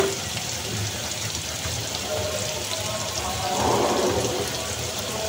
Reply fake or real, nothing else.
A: real